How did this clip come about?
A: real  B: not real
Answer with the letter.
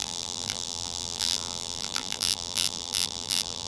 B